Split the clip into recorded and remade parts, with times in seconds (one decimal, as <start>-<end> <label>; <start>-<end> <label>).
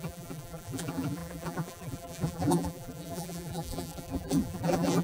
0.0-5.0 remade